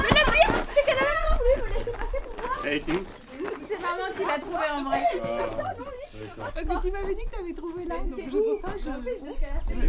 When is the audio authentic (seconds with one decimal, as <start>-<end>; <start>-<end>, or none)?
0.0-9.9